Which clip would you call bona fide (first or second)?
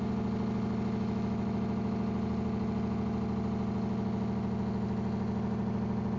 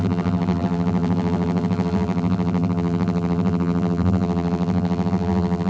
first